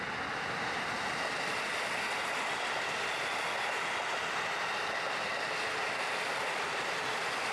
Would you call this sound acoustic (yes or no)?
yes